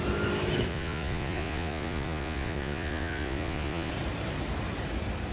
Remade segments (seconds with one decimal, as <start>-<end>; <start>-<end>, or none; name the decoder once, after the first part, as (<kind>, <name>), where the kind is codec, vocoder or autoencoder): 0.7-3.9 (vocoder, Vocos)